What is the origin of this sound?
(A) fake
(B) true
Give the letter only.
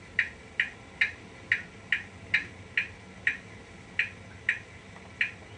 B